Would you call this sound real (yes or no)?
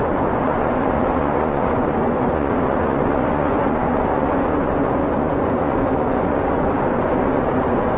no